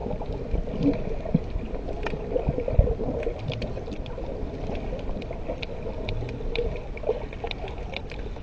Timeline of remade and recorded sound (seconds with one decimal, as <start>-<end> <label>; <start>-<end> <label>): 0.0-8.4 recorded